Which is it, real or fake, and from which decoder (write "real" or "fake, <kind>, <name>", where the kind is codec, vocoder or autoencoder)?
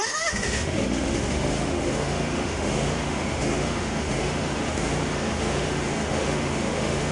fake, autoencoder, DAC-VAE